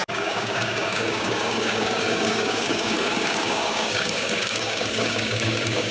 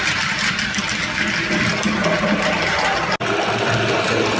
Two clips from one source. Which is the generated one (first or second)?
first